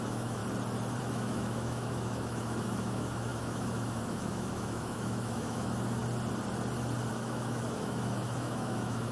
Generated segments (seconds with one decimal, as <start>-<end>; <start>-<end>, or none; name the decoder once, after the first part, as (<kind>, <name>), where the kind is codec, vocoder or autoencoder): 0.0-0.4 (autoencoder, DAC-VAE); 1.0-6.0; 7.1-9.1